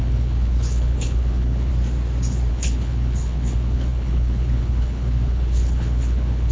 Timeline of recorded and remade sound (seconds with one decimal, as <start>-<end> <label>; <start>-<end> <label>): 0.0-1.7 remade; 1.7-2.5 recorded; 2.5-6.5 remade